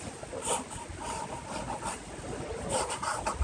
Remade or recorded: recorded